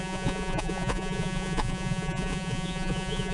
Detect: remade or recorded remade